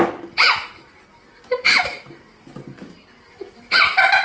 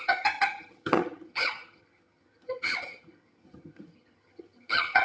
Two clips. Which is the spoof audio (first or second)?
second